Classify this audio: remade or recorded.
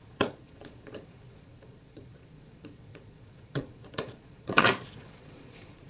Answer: remade